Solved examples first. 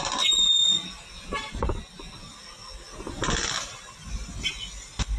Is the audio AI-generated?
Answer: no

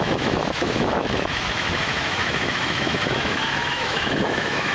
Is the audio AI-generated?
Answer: yes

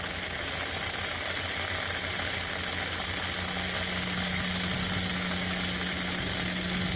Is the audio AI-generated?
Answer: no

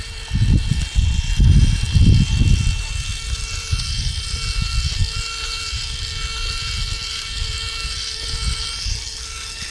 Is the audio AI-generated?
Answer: no